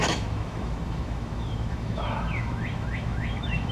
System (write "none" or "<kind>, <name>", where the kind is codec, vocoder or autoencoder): autoencoder, DAC-VAE